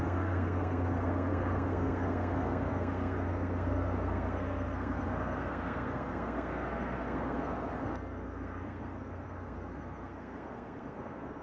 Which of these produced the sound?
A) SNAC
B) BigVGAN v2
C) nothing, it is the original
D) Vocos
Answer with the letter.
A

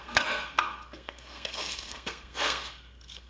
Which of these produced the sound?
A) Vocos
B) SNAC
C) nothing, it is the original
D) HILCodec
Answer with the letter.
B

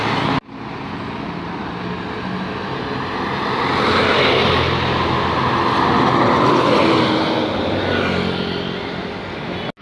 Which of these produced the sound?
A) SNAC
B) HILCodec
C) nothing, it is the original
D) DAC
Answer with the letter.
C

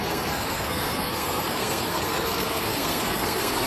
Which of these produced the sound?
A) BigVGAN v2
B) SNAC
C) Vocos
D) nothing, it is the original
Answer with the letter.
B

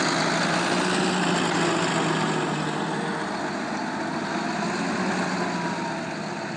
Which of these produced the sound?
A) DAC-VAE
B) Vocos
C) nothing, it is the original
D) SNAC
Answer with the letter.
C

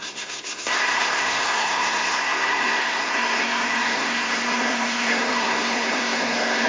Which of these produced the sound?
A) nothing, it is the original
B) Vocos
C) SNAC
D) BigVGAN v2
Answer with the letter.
C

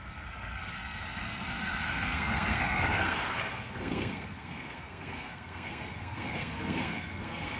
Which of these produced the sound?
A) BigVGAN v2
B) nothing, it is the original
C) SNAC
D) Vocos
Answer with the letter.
C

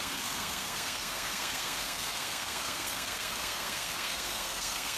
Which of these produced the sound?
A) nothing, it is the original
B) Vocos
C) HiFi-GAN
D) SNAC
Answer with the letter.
D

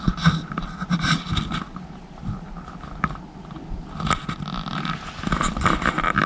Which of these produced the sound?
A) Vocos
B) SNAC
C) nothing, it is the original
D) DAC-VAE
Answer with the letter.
C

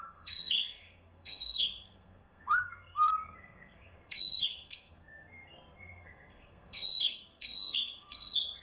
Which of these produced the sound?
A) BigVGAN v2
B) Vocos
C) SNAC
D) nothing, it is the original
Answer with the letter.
C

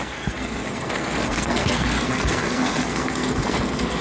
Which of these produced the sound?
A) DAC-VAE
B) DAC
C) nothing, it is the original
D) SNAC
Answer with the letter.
D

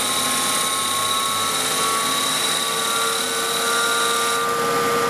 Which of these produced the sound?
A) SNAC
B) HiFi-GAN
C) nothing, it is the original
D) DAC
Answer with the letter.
C